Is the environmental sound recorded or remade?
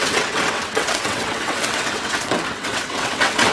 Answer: remade